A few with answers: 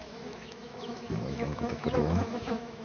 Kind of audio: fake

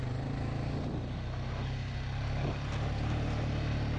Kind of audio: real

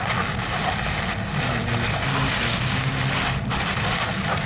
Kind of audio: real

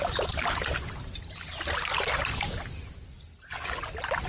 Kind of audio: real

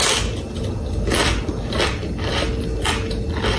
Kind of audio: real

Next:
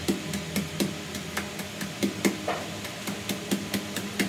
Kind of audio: real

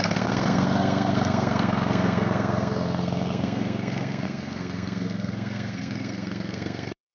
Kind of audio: fake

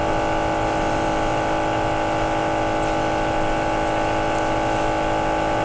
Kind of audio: real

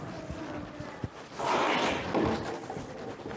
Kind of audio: real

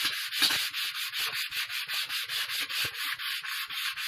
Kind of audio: real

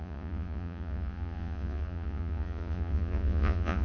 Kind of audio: fake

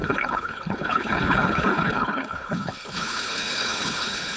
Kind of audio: fake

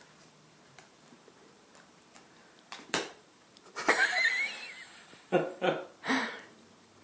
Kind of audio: fake